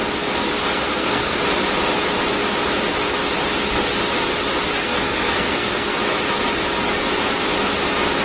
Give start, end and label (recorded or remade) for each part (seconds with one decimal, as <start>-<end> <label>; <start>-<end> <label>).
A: 0.0-0.7 recorded; 0.7-1.4 remade; 1.4-4.8 recorded; 4.8-6.0 remade; 6.0-8.2 recorded